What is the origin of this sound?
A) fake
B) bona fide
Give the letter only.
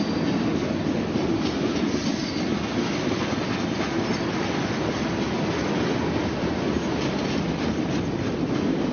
B